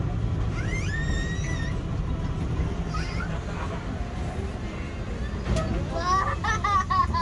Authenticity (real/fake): real